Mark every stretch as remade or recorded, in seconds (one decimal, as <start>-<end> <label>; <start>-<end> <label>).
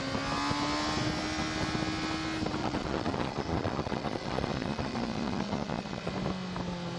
0.0-2.6 recorded; 2.6-6.1 remade; 6.1-7.0 recorded